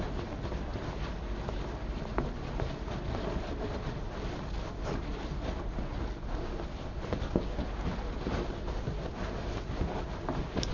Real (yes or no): yes